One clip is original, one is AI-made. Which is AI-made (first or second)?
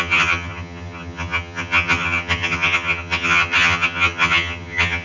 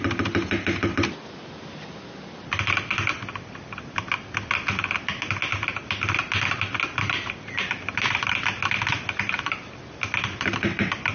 first